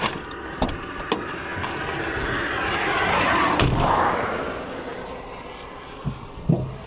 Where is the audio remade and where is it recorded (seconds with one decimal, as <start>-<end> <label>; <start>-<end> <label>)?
0.0-6.9 recorded